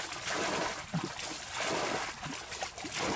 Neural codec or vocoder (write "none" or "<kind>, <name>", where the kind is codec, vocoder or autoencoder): none